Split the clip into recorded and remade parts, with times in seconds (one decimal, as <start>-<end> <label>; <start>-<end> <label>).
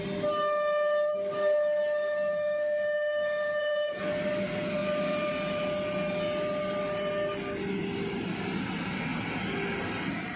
0.0-1.1 recorded; 1.1-4.1 remade; 4.1-10.4 recorded